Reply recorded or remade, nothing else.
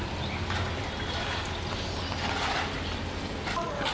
recorded